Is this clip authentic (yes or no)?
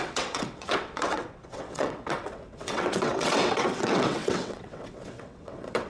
no